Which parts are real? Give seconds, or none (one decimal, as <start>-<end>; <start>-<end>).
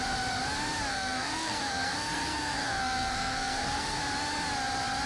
0.0-0.9; 4.0-5.1